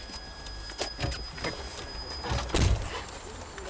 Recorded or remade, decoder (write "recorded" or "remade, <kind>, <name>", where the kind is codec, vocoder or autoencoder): recorded